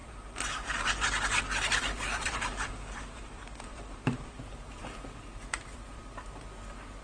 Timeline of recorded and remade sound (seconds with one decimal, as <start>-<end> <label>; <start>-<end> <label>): 0.0-1.4 remade; 1.4-1.8 recorded; 1.8-6.0 remade; 6.0-7.0 recorded